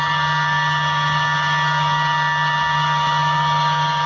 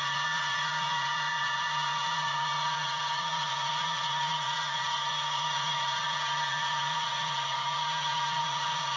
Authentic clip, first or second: first